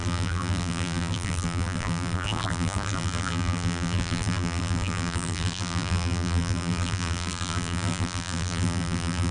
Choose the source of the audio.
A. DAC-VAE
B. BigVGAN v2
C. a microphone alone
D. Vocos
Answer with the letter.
B